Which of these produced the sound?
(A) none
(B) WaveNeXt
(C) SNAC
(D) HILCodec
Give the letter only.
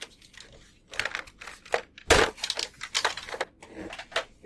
A